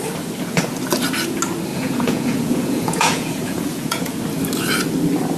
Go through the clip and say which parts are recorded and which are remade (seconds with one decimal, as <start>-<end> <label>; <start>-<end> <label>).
0.0-1.7 recorded; 1.7-4.2 remade; 4.2-5.4 recorded